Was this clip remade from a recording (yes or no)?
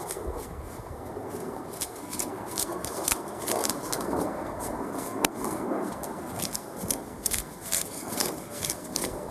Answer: yes